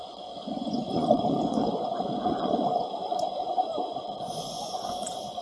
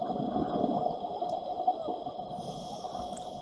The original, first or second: second